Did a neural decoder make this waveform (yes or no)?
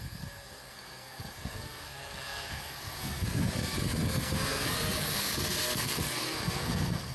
yes